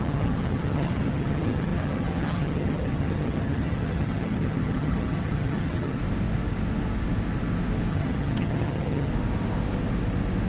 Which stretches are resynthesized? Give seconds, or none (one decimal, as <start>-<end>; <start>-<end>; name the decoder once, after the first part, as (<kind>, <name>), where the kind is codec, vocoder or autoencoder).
0.0-6.0 (vocoder, HiFi-GAN); 7.9-9.1